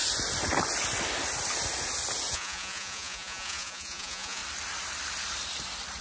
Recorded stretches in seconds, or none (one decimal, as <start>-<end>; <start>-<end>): 0.0-2.3; 4.4-6.0